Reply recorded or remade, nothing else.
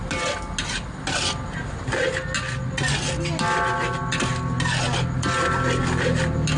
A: recorded